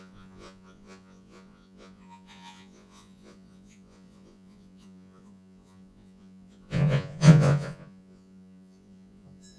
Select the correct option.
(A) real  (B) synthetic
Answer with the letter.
B